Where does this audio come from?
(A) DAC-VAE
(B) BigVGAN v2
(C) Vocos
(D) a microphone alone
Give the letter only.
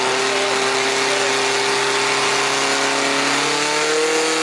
D